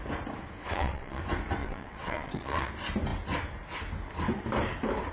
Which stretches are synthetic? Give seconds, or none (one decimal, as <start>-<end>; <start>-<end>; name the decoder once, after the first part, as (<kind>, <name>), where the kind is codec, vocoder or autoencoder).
0.6-1.2 (vocoder, WaveNeXt); 1.6-2.7